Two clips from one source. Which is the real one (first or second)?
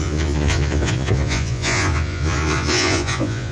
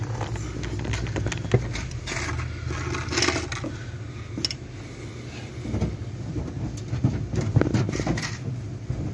second